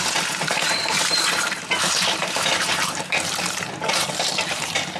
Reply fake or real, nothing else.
fake